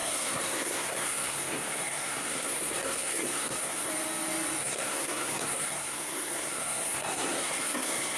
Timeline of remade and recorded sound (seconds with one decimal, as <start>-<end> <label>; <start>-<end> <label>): 0.0-3.9 remade; 3.9-4.6 recorded; 4.6-8.2 remade